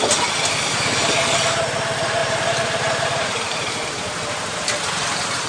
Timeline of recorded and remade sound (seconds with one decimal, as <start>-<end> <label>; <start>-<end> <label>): 0.0-2.2 recorded; 2.2-5.5 remade

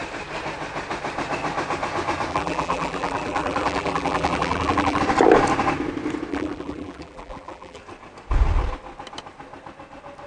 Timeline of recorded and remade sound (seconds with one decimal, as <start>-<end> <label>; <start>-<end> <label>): 0.0-2.3 recorded; 2.3-5.0 remade; 5.0-6.3 recorded; 6.3-7.8 remade; 7.8-10.3 recorded

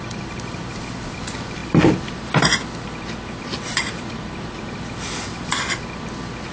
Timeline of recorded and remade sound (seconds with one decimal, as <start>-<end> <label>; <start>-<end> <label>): 0.0-1.6 recorded; 1.6-4.8 remade; 4.8-5.3 recorded; 5.3-5.8 remade; 5.8-6.5 recorded

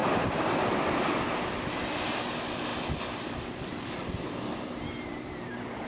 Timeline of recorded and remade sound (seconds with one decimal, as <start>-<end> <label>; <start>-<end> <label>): 0.0-0.6 remade; 0.6-2.7 recorded; 2.7-5.9 remade